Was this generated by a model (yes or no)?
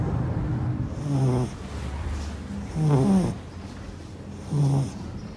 no